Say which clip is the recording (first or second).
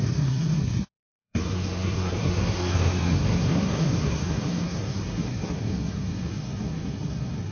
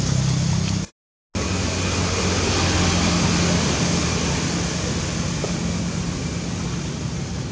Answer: second